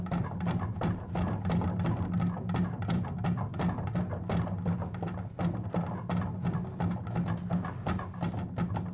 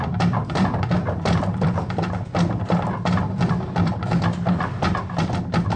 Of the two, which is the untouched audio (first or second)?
first